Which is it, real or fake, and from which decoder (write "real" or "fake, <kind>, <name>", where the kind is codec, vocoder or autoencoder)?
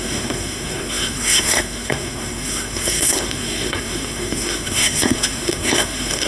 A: fake, codec, SNAC